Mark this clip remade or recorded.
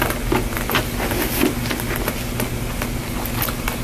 recorded